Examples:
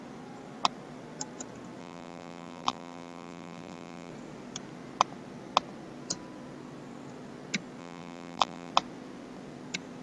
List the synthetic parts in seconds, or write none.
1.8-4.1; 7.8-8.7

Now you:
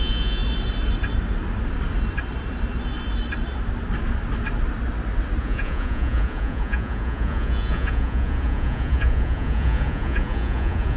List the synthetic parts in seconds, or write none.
0.0-0.4; 5.4-11.0

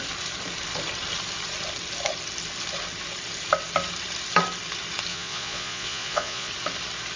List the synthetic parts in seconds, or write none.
5.1-6.5

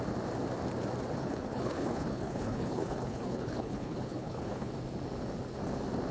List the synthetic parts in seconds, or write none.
1.2-4.7

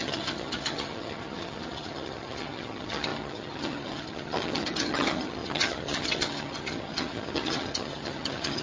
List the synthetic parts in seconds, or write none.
0.0-8.6

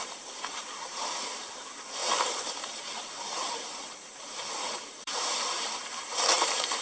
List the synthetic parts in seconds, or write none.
0.0-6.8

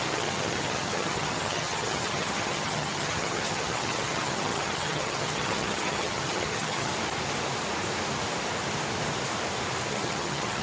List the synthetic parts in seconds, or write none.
0.0-6.9; 9.9-10.6

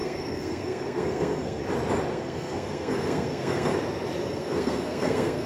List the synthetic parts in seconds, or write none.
0.0-1.6; 2.1-3.7; 4.3-5.5